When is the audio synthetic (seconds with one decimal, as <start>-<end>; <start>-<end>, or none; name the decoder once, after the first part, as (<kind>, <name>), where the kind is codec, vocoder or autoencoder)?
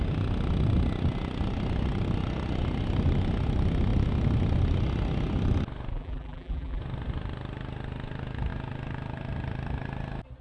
5.9-6.8 (vocoder, BigVGAN v2)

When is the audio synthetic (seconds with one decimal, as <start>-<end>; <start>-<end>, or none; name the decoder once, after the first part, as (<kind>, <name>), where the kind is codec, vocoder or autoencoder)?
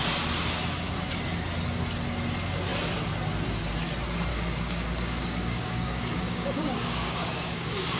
4.3-8.0 (codec, DAC)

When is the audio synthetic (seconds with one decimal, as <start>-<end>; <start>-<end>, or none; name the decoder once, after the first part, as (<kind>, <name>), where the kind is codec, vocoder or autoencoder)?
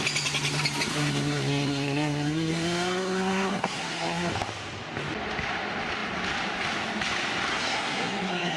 0.9-4.3 (codec, SNAC); 7.5-8.6